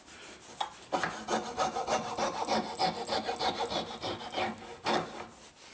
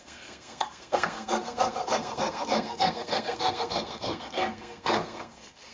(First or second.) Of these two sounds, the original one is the first